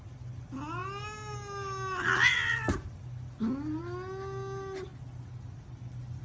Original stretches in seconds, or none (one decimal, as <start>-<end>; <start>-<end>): 0.0-6.2

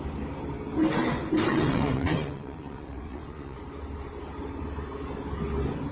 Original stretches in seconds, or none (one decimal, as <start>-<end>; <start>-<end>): 0.0-1.5; 3.6-5.9